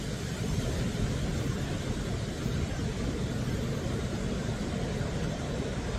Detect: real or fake real